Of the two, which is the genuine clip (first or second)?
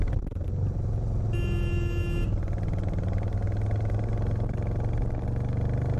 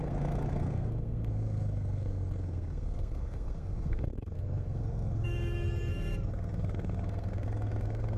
first